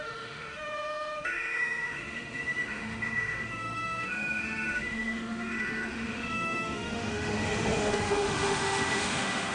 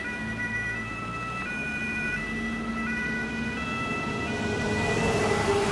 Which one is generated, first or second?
first